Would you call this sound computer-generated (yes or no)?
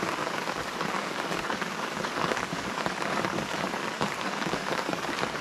yes